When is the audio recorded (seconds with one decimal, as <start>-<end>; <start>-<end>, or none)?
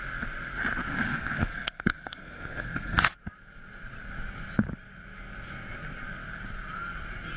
0.0-0.9; 3.1-7.4